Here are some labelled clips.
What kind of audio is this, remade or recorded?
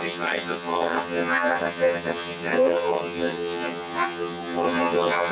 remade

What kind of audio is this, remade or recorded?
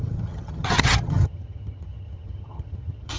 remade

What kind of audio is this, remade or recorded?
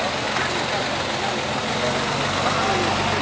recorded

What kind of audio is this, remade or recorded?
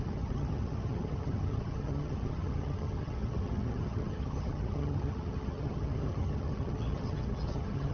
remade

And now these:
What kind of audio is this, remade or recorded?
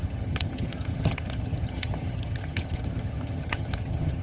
remade